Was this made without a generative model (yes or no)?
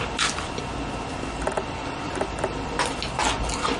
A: yes